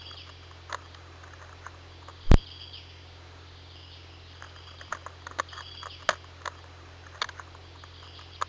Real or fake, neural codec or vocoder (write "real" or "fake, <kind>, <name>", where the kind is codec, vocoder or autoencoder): real